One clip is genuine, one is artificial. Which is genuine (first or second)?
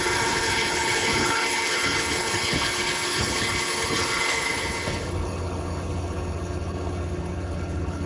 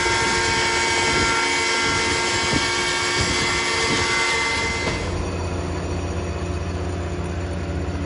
second